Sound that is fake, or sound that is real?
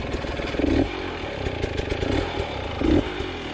real